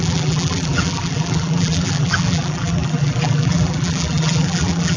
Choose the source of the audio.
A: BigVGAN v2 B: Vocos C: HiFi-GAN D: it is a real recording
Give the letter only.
A